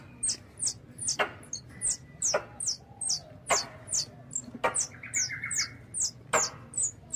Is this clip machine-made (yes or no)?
no